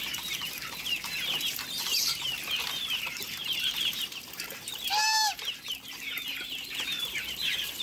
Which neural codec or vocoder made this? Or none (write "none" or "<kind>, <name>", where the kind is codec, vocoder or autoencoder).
vocoder, BigVGAN v2